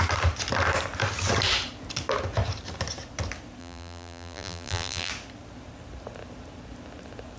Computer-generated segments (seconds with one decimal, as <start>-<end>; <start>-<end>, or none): 3.6-5.1